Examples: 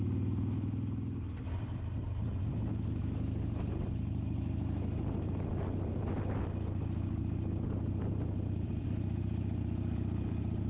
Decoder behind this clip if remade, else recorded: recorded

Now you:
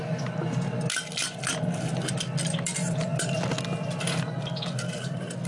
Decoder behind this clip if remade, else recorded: recorded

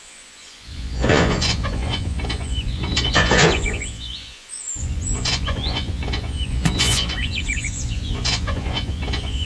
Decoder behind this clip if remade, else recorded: remade, vocoder, Vocos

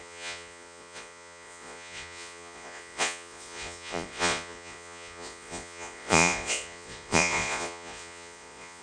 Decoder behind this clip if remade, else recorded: remade, vocoder, Vocos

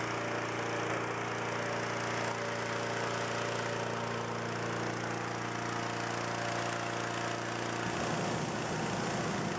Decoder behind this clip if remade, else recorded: recorded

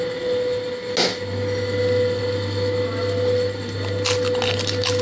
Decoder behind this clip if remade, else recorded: recorded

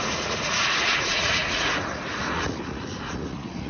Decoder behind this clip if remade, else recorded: remade, vocoder, Vocos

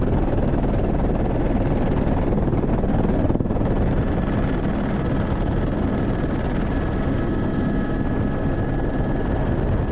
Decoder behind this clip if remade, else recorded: recorded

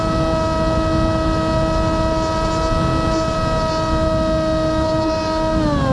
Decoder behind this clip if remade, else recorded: recorded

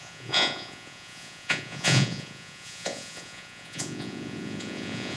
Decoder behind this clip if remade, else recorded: remade, vocoder, Vocos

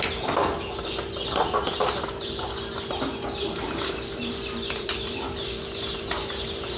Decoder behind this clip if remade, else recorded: recorded